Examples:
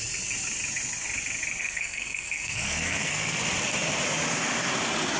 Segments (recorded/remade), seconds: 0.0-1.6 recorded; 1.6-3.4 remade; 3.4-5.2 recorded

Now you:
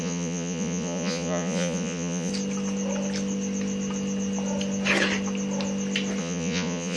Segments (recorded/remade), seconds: 0.0-2.3 remade; 2.3-6.2 recorded; 6.2-7.0 remade

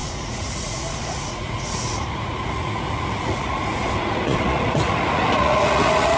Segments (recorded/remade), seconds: 0.0-6.2 remade